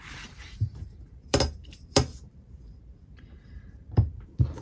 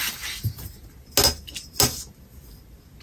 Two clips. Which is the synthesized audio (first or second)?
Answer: first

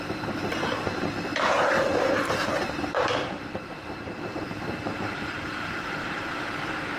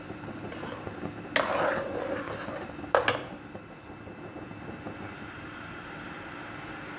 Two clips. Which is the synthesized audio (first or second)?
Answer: first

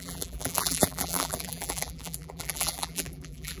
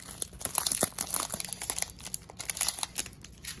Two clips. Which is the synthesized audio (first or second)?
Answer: first